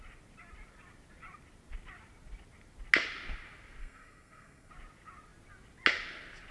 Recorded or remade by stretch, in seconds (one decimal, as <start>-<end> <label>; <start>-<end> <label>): 0.0-3.8 recorded; 3.8-4.7 remade; 4.7-6.5 recorded